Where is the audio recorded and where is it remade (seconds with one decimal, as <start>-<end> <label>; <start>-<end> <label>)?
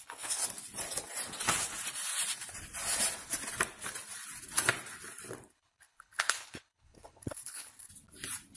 0.0-0.4 remade; 0.4-5.5 recorded; 5.5-7.9 remade; 7.9-8.6 recorded